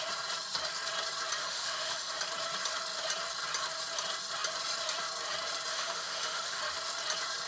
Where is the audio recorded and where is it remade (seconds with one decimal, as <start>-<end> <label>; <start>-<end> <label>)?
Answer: 0.0-1.4 recorded; 1.4-2.1 remade; 2.1-5.7 recorded; 5.7-6.6 remade; 6.6-7.5 recorded